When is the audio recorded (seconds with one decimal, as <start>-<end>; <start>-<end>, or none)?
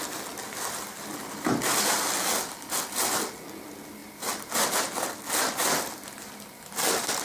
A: 0.0-7.2